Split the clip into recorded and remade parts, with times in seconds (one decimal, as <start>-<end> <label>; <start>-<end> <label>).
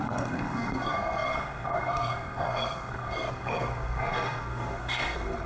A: 0.0-5.5 remade